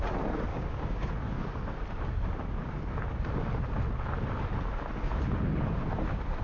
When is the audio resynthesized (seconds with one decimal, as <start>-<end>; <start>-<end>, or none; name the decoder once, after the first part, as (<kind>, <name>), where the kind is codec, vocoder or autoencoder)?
0.5-1.1 (codec, DAC)